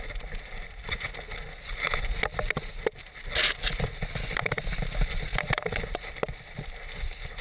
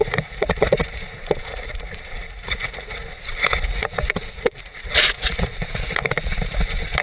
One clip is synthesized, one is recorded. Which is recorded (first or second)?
first